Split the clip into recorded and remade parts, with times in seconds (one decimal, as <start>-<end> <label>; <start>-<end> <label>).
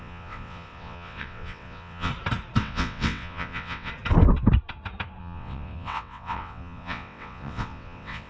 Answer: 0.0-2.1 remade; 2.1-2.6 recorded; 2.6-3.9 remade; 3.9-5.2 recorded; 5.2-8.3 remade